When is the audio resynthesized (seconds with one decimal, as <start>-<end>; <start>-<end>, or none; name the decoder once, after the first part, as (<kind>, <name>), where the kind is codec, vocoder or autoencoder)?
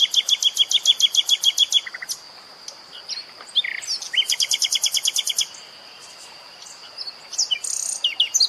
0.9-1.7 (vocoder, BigVGAN v2)